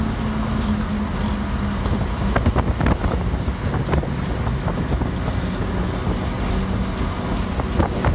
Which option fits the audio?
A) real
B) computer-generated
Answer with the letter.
A